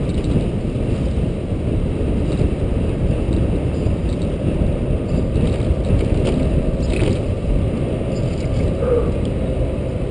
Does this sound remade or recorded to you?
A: recorded